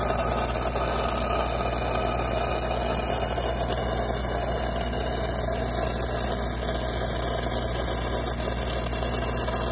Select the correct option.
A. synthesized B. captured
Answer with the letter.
B